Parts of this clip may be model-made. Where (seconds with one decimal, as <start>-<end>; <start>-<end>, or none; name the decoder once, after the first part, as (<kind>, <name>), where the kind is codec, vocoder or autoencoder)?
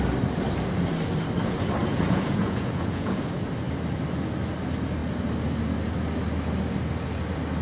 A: 1.8-3.4 (vocoder, Vocos)